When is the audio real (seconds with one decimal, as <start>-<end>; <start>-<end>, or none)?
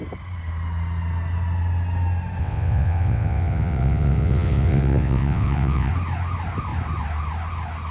0.0-2.4; 5.9-7.9